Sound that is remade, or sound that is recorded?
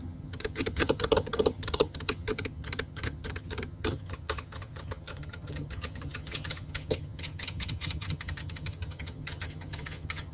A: remade